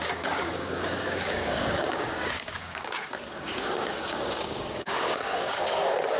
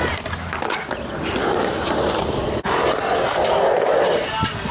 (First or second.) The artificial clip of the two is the first